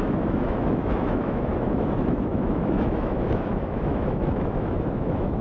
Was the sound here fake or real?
fake